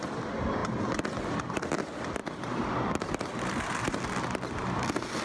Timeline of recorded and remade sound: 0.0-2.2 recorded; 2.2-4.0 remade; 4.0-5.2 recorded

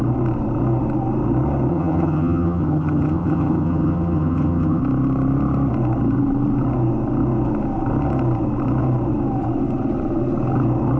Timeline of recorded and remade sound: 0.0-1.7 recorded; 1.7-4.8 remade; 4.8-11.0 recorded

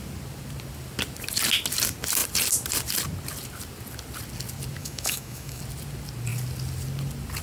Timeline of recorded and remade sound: 0.0-4.8 recorded; 4.8-5.6 remade; 5.6-7.4 recorded

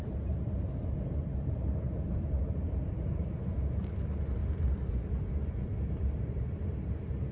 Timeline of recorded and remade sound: 0.0-4.4 remade; 4.4-4.9 recorded; 4.9-7.3 remade

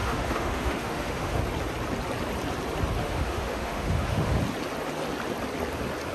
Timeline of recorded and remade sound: 0.0-1.4 remade; 1.4-3.0 recorded; 3.0-4.4 remade; 4.4-6.1 recorded